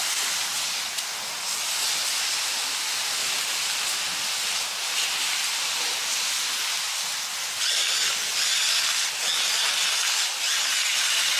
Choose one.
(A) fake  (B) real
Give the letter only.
B